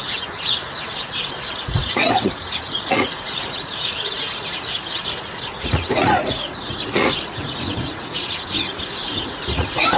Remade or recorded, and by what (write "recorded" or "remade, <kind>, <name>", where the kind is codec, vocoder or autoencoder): remade, vocoder, Vocos